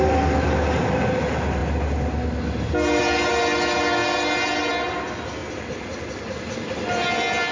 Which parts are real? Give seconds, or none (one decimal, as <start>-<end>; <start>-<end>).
0.0-7.5